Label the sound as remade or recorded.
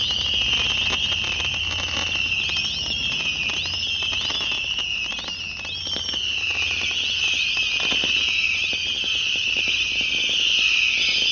recorded